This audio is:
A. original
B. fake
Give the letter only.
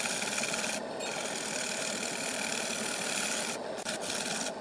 A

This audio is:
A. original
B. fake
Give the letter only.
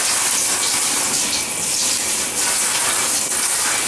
A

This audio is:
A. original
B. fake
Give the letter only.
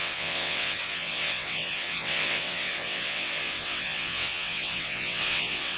B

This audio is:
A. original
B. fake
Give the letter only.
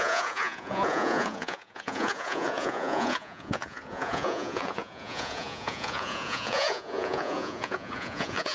B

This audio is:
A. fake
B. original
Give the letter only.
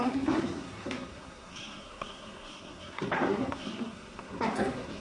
A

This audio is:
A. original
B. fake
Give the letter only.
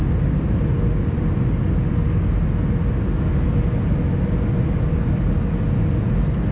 A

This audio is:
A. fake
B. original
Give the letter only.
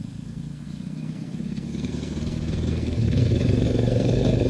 A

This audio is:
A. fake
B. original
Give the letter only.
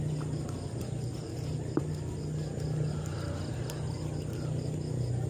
B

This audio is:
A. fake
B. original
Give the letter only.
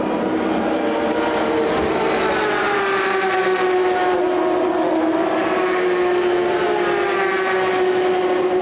B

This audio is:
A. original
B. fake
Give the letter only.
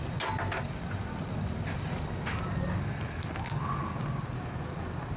A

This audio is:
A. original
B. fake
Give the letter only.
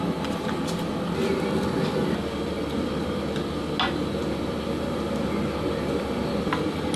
A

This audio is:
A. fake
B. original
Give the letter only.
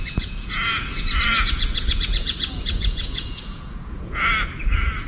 A